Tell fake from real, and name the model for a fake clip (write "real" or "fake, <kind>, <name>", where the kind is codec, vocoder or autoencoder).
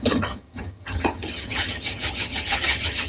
fake, vocoder, HiFi-GAN